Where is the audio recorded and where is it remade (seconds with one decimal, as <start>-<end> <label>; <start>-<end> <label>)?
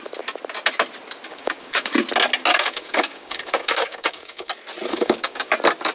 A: 0.0-1.3 recorded; 1.3-1.9 remade; 1.9-2.5 recorded; 2.5-4.5 remade; 4.5-4.9 recorded; 4.9-5.5 remade; 5.5-5.9 recorded